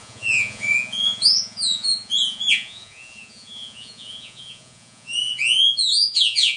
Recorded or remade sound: remade